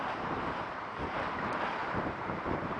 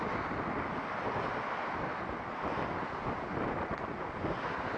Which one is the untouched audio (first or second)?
second